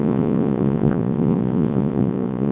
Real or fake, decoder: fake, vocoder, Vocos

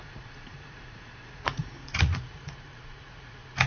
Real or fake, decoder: fake, vocoder, Vocos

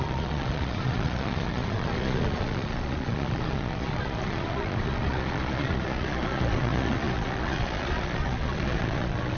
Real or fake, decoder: fake, vocoder, Vocos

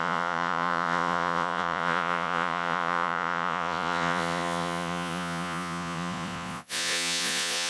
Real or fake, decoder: fake, vocoder, Vocos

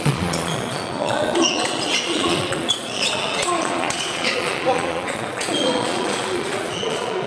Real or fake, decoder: fake, vocoder, Vocos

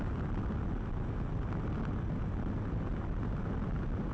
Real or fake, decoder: real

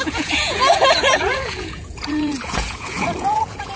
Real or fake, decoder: fake, vocoder, Vocos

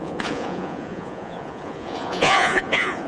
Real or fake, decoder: fake, vocoder, Vocos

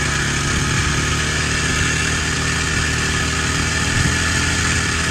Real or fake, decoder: real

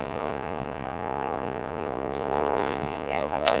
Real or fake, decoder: fake, vocoder, Vocos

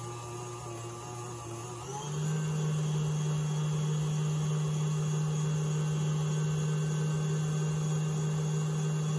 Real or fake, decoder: real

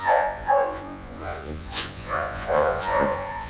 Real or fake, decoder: fake, vocoder, Vocos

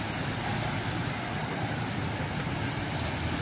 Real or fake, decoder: real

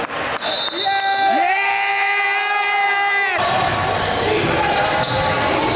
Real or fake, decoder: real